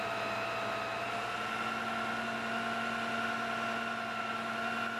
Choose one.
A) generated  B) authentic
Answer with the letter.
B